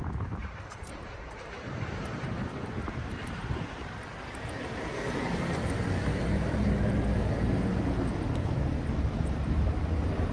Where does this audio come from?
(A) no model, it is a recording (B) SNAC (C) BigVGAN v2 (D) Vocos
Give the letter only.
C